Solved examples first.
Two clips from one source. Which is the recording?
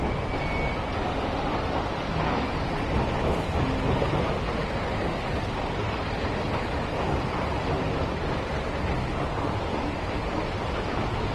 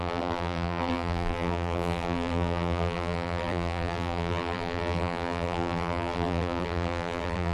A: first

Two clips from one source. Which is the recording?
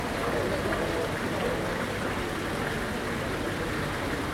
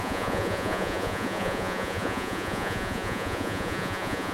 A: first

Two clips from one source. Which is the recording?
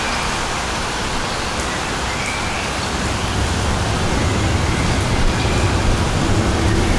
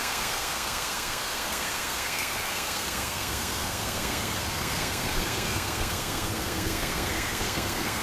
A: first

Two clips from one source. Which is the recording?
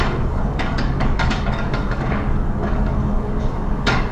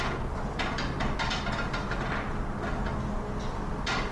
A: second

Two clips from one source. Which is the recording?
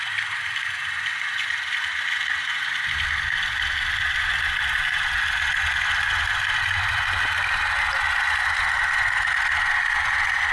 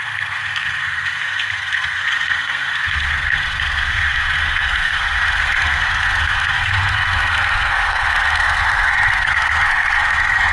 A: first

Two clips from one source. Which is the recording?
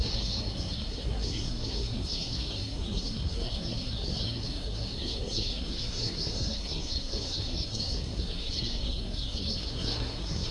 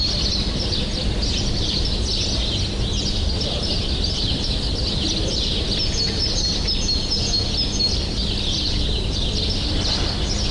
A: second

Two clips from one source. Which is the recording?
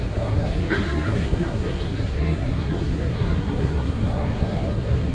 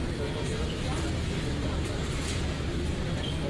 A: second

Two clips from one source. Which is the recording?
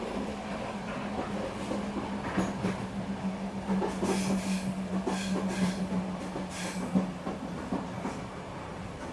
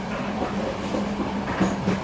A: first